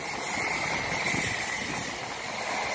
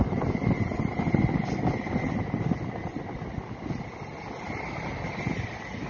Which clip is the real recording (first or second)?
second